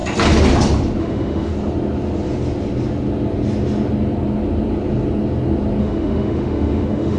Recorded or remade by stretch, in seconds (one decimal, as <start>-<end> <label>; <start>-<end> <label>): 0.0-1.0 recorded; 1.0-1.5 remade; 1.5-5.8 recorded; 5.8-7.2 remade